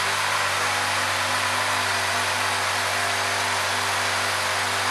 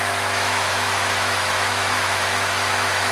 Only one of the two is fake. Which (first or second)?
second